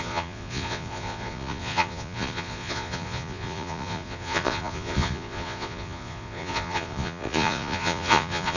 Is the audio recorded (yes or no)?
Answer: no